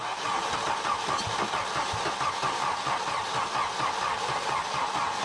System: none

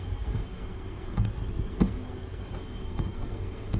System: codec, SNAC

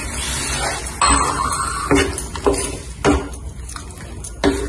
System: none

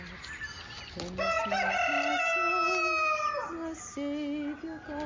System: none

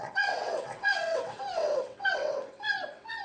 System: vocoder, WaveNeXt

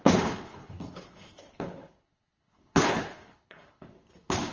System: codec, HILCodec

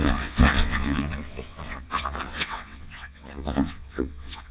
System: vocoder, WaveNeXt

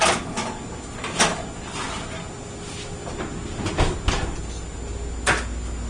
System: none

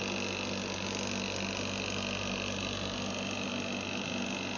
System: none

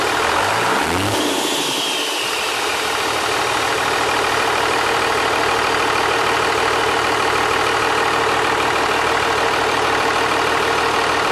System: none